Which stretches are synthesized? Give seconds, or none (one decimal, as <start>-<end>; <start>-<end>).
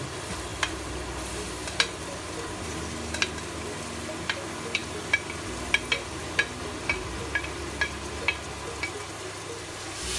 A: 0.5-1.1